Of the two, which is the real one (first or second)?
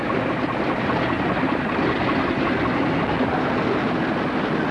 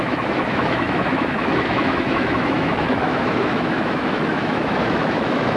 first